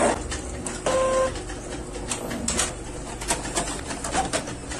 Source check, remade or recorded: recorded